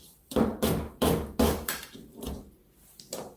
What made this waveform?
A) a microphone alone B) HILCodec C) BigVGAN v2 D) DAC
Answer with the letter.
C